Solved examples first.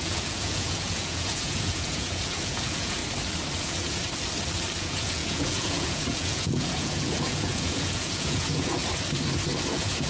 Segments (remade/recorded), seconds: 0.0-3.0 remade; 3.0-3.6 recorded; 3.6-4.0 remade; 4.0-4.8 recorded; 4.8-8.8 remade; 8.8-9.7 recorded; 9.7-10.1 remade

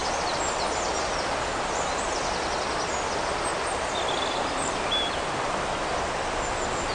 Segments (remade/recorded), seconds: 0.0-6.9 recorded

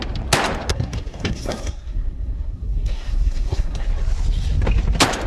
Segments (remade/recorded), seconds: 0.0-0.7 recorded; 0.7-3.9 remade; 3.9-5.3 recorded

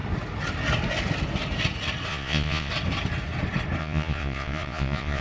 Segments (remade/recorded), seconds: 0.0-2.1 recorded; 2.1-2.7 remade; 2.7-3.8 recorded; 3.8-5.2 remade

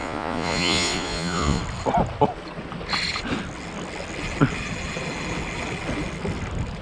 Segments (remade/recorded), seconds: 0.0-1.6 remade; 1.6-6.8 recorded

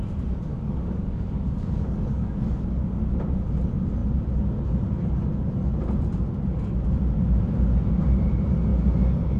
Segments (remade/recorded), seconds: 0.0-0.5 recorded; 0.5-3.4 remade; 3.4-9.4 recorded

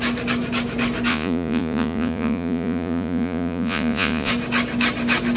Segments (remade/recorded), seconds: 0.0-1.1 recorded; 1.1-4.3 remade; 4.3-5.4 recorded

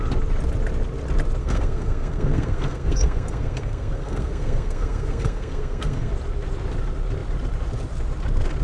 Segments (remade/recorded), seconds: 0.0-1.4 recorded; 1.4-6.1 remade; 6.1-8.6 recorded